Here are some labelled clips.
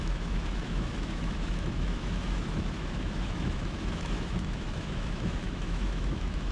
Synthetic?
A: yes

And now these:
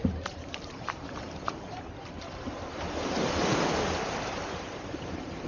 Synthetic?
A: yes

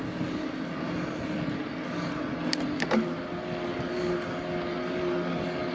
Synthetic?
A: no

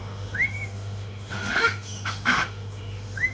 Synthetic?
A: yes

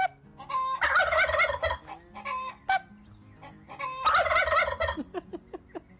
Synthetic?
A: no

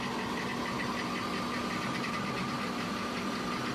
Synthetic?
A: no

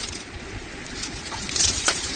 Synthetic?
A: yes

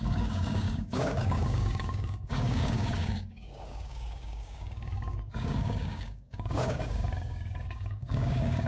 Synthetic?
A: yes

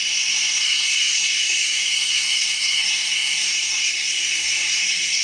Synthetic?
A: yes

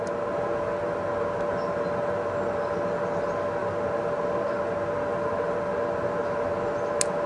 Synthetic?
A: no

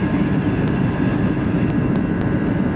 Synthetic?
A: yes